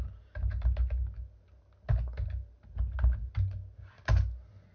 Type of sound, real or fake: real